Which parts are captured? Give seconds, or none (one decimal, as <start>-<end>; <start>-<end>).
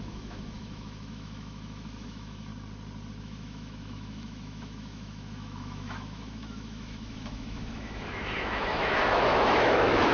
2.5-3.2